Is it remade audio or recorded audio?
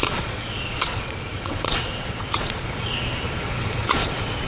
remade